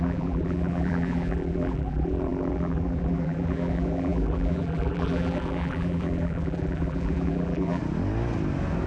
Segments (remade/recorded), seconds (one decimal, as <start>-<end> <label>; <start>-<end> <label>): 0.0-7.8 remade; 7.8-8.9 recorded